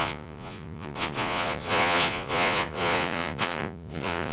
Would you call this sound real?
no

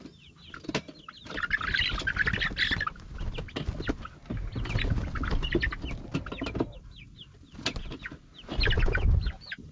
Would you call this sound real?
yes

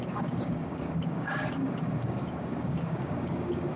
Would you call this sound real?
no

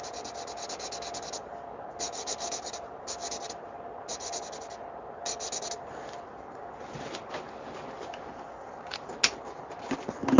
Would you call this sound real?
yes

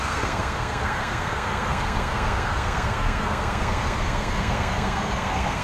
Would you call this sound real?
no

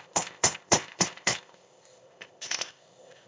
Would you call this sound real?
no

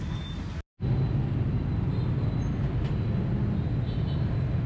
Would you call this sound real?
yes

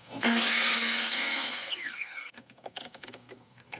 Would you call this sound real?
no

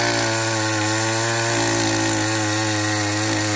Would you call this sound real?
yes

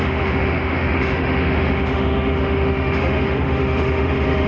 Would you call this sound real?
no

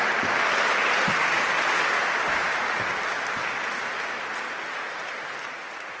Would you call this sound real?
yes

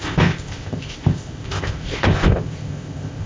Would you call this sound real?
no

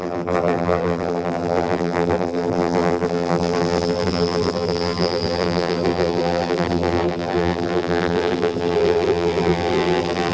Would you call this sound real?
no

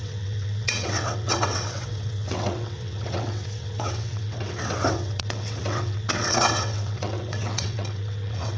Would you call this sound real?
no